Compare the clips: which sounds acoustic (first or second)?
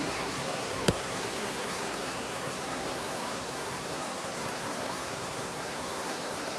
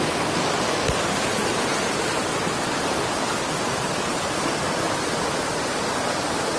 second